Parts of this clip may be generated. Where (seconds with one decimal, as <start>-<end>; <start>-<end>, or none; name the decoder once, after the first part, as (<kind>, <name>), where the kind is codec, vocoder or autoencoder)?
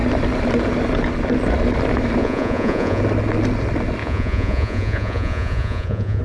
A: 2.2-3.0 (vocoder, Vocos); 4.0-6.2